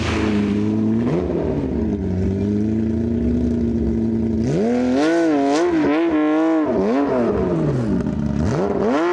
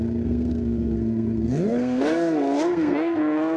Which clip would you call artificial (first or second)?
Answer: second